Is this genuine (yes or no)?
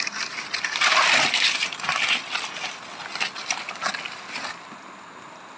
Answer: yes